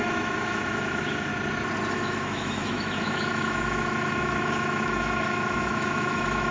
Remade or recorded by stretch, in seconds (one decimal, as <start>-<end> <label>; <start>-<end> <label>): 0.0-1.3 remade; 1.3-1.9 recorded; 1.9-6.5 remade